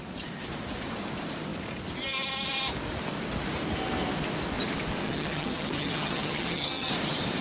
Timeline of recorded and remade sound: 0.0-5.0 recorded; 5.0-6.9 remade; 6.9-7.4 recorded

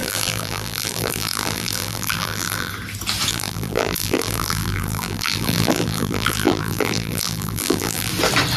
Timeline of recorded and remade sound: 0.0-2.7 remade; 2.7-3.3 recorded; 3.3-8.1 remade; 8.1-8.6 recorded